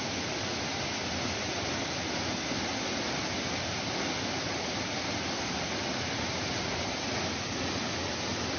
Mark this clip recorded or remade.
recorded